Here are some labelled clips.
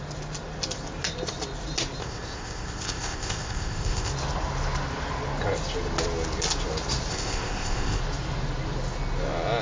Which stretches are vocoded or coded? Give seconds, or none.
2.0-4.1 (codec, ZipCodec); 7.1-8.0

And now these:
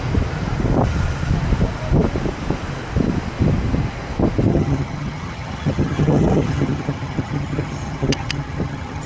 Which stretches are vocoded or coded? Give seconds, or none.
4.5-9.1 (vocoder, HiFi-GAN)

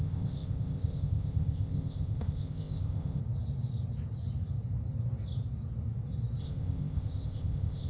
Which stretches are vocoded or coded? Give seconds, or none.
0.0-3.2 (codec, ZipCodec); 6.4-7.9

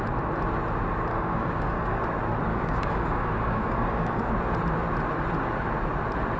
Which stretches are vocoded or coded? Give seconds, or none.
1.1-2.0 (codec, DAC); 2.5-4.3

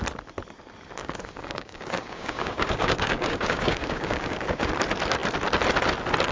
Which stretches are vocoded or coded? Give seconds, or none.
1.0-4.7 (codec, DAC)